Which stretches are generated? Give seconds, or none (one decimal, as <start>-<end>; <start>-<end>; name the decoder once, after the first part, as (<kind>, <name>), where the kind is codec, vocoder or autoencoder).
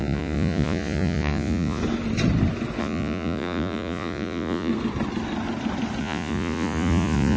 0.0-1.8 (vocoder, Vocos); 2.8-4.7; 6.0-7.4